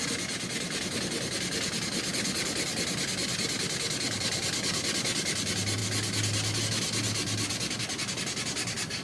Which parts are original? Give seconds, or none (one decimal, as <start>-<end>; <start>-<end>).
0.0-9.0